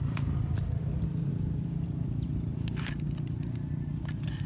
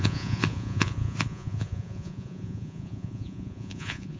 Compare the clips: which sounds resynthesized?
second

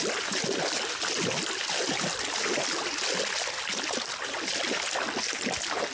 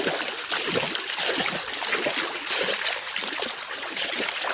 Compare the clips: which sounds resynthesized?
first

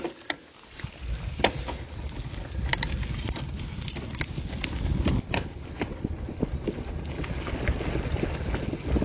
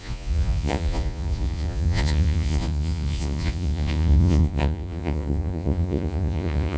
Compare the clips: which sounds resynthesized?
second